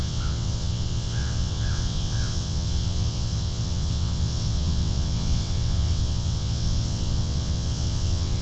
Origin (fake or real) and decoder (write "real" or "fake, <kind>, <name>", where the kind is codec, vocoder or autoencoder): fake, vocoder, WaveNeXt